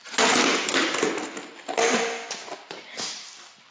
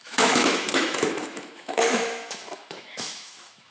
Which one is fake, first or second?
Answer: second